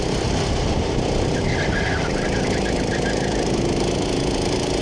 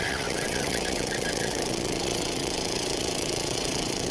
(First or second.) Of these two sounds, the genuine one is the first